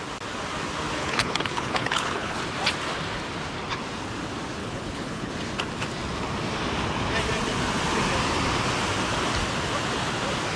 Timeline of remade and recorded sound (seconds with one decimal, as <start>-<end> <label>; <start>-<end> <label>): 0.0-1.0 recorded; 1.0-2.4 remade; 2.4-4.6 recorded; 4.6-5.3 remade; 5.3-10.6 recorded